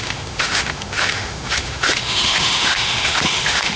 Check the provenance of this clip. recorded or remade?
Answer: remade